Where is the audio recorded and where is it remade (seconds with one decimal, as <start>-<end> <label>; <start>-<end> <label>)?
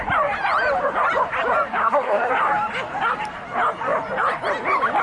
0.0-1.8 recorded; 1.8-2.3 remade; 2.3-5.0 recorded